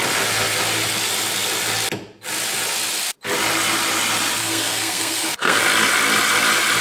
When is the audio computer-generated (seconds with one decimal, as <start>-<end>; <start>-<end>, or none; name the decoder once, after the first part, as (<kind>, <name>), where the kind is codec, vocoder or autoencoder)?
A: 4.4-5.6 (codec, SNAC)